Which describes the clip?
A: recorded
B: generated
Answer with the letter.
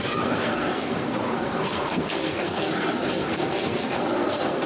B